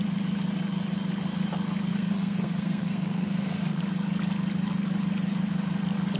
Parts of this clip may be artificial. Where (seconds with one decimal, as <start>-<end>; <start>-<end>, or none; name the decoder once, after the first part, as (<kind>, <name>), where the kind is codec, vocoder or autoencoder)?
1.9-3.8 (codec, SNAC)